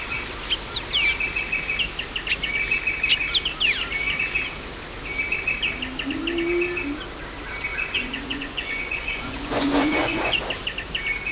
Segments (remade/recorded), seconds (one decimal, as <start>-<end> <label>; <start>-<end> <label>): 0.0-7.7 recorded; 7.7-10.4 remade; 10.4-11.3 recorded